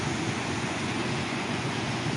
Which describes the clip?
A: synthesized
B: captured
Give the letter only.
A